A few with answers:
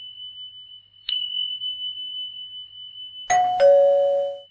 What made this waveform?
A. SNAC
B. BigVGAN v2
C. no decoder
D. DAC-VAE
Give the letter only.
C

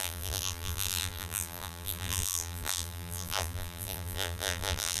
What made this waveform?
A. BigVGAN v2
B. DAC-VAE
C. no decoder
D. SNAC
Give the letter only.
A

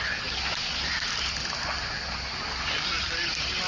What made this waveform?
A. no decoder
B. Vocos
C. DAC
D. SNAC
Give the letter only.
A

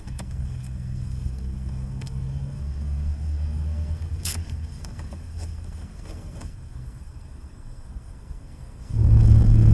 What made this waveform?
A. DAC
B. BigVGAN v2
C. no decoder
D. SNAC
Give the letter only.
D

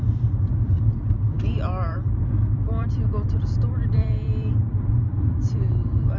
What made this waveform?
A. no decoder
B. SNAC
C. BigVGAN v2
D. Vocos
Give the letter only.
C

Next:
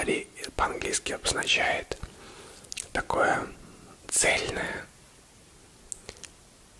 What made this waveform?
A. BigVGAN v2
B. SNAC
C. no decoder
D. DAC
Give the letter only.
C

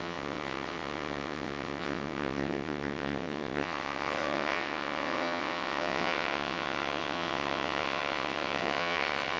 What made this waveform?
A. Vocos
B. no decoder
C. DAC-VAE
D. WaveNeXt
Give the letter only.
D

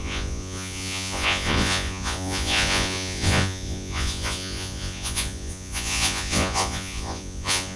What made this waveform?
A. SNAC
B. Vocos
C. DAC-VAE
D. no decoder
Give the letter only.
B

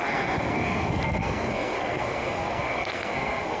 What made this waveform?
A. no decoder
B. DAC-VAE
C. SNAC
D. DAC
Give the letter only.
C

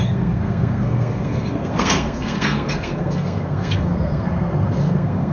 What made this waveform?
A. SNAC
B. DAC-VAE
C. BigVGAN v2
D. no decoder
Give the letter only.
A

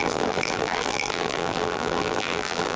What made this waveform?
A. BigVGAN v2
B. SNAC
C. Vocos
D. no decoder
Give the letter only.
A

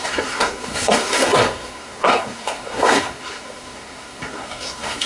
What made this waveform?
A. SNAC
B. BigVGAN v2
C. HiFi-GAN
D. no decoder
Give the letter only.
A